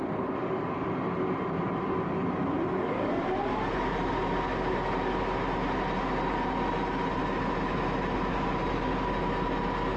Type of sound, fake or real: real